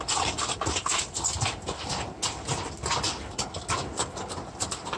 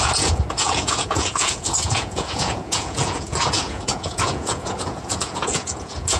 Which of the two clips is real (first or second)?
first